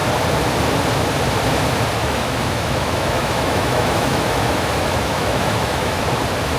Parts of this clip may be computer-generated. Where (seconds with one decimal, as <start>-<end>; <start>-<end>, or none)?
2.0-6.0